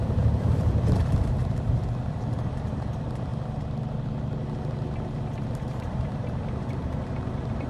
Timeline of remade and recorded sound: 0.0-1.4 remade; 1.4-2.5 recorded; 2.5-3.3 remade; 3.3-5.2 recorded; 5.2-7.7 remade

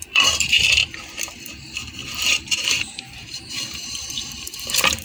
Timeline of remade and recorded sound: 0.0-0.8 remade; 0.8-1.4 recorded; 1.4-5.0 remade